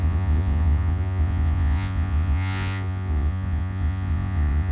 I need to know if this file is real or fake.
fake